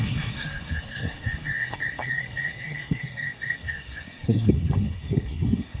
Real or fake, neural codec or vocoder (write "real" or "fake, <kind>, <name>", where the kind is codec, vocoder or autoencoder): fake, codec, SNAC